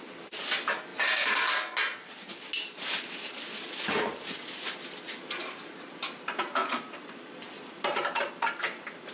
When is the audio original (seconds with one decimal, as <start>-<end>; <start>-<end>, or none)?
0.0-6.6; 8.1-9.1